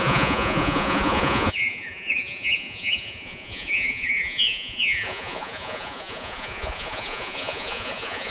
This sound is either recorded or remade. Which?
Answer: remade